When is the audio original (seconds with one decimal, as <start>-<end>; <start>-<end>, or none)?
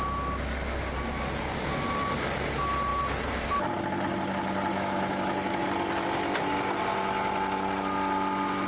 0.0-4.7; 5.6-8.7